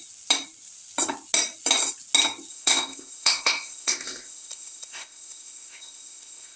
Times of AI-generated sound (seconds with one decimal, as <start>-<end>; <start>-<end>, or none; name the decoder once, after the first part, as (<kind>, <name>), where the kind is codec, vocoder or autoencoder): 2.5-6.6 (codec, ZipCodec)